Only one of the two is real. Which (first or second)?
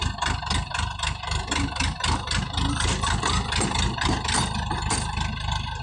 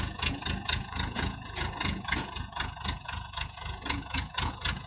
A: first